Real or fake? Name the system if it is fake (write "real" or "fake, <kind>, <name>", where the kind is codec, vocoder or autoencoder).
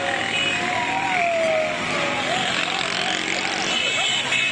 real